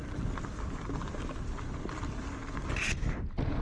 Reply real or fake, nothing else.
real